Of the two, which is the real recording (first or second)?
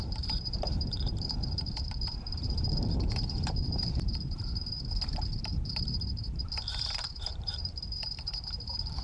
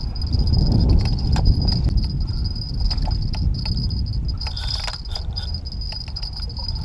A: second